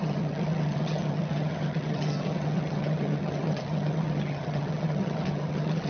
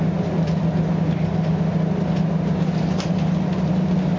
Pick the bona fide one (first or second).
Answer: second